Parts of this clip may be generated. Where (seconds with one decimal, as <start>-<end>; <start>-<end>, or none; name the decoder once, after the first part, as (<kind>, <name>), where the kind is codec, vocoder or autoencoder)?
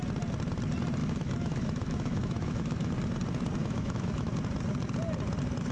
1.0-2.9 (autoencoder, DAC-VAE); 3.6-4.3